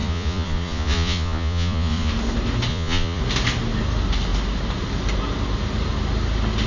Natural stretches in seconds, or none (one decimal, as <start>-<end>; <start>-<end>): 2.1-2.7; 3.2-6.7